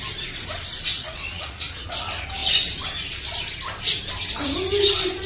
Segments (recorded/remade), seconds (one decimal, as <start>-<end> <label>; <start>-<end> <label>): 0.0-0.9 recorded; 0.9-1.9 remade; 1.9-5.3 recorded